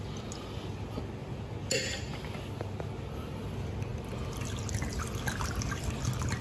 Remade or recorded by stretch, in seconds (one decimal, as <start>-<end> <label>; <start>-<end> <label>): 0.0-6.4 recorded